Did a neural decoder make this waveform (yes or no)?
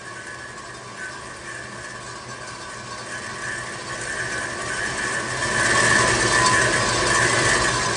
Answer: no